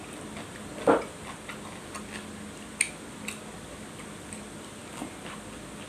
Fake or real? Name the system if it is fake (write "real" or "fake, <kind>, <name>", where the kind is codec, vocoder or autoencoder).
real